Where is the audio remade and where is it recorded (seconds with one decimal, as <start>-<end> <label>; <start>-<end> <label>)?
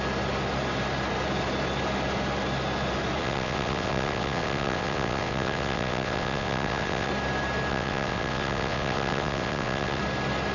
0.0-3.2 recorded; 3.2-7.1 remade; 7.1-7.7 recorded; 7.7-10.0 remade; 10.0-10.5 recorded